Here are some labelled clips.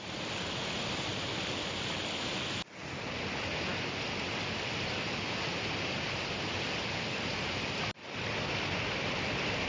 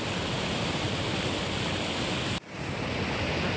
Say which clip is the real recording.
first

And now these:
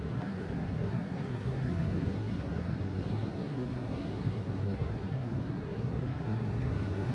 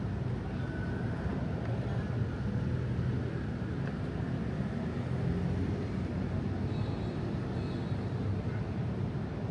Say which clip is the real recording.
second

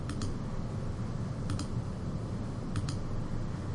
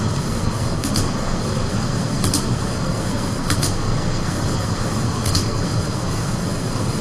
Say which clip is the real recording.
first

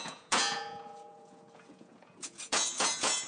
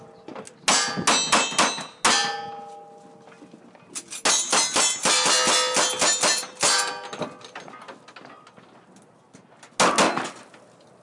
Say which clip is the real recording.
second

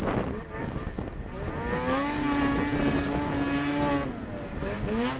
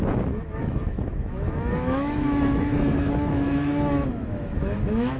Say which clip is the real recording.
first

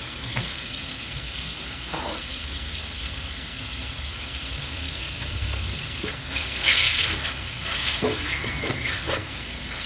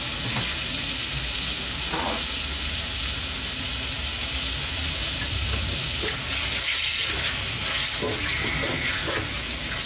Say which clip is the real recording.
second